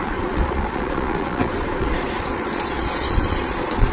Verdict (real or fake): fake